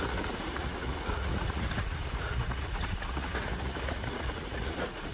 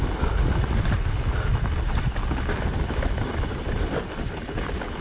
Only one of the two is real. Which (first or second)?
second